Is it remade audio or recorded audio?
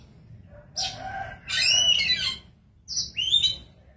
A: recorded